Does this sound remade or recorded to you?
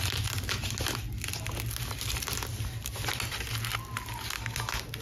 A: recorded